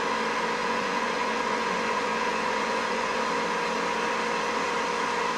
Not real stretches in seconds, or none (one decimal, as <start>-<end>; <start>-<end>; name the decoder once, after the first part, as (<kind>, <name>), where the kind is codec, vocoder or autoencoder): 0.6-3.2 (vocoder, Vocos)

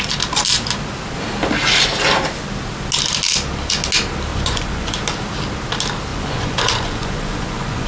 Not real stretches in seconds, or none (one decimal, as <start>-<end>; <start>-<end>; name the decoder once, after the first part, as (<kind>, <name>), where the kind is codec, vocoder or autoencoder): 4.3-5.0 (vocoder, Vocos); 6.1-7.9

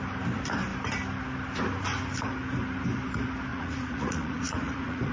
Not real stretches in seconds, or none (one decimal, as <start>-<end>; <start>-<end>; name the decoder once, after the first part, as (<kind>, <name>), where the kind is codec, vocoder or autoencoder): 3.5-5.1 (vocoder, Vocos)

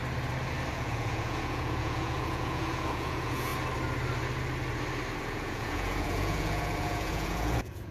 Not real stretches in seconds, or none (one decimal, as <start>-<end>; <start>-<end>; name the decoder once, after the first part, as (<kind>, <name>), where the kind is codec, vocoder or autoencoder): 0.7-3.5 (vocoder, Vocos); 5.2-7.9

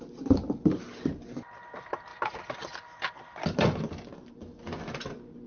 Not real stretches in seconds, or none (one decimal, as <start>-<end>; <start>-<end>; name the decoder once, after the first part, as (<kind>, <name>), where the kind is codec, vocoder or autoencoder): none